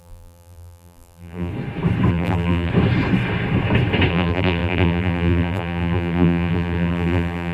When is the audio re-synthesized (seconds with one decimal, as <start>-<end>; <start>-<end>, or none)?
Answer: 0.0-1.5; 2.1-2.7; 4.1-7.5